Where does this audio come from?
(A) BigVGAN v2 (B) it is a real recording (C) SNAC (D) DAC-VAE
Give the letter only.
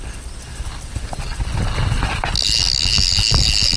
B